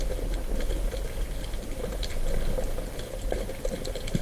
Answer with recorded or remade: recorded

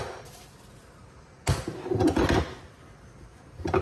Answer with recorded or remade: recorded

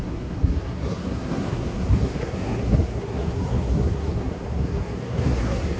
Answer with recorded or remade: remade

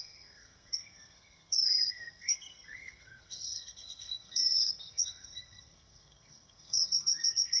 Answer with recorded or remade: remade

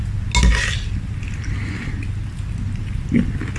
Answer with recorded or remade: recorded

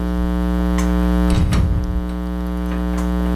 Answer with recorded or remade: recorded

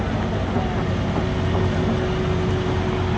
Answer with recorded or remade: recorded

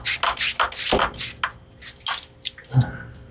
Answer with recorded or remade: recorded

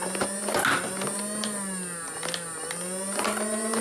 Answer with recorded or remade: recorded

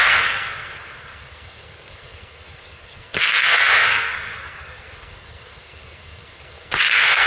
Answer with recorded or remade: remade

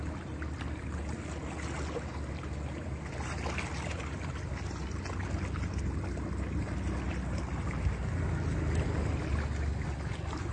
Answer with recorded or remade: recorded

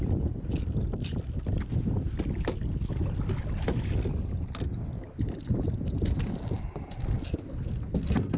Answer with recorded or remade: recorded